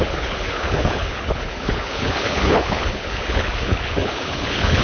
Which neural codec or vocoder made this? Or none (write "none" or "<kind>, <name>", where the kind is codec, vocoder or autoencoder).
codec, HILCodec